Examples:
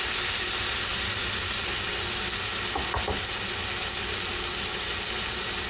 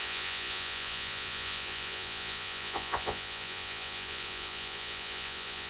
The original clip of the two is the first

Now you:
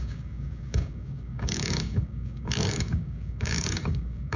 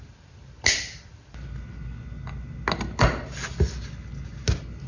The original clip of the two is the second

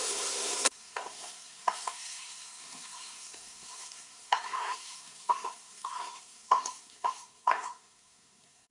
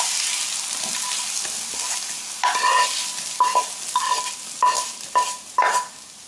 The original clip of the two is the second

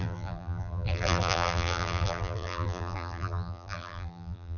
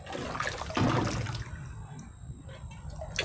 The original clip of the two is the second